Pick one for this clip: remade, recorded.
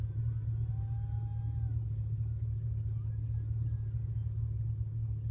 recorded